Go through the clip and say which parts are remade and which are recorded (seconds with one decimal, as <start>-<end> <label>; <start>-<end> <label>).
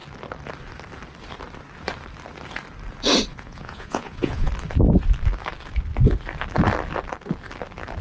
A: 0.0-3.3 recorded; 3.3-4.5 remade; 4.5-8.0 recorded